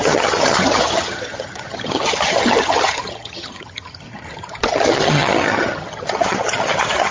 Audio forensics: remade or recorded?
remade